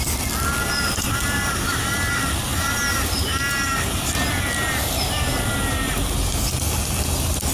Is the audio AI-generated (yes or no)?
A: no